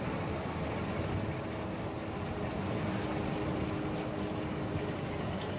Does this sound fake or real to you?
real